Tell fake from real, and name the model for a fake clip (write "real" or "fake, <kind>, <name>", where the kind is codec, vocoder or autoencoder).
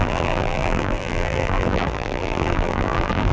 fake, vocoder, BigVGAN v2